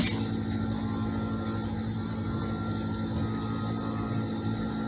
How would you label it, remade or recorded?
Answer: recorded